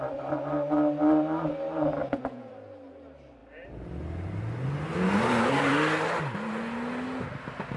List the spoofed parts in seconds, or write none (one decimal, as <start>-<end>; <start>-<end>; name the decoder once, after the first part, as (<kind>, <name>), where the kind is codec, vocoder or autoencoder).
2.0-2.5 (vocoder, Vocos)